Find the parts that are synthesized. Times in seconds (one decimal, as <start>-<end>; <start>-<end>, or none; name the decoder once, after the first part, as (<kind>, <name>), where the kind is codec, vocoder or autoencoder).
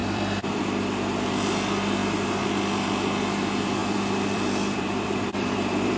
0.0-0.6 (vocoder, BigVGAN v2); 3.8-6.0